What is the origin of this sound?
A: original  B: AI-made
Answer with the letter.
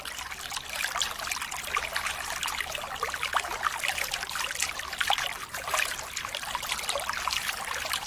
A